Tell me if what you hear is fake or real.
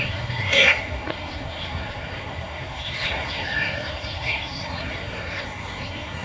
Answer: fake